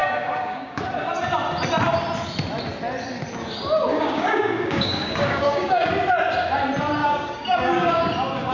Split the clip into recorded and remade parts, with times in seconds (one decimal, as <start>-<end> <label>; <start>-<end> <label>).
0.0-0.8 remade; 0.8-3.9 recorded; 3.9-5.9 remade; 5.9-7.0 recorded; 7.0-8.0 remade; 8.0-8.5 recorded